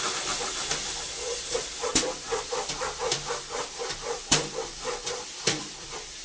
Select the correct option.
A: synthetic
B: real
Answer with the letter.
A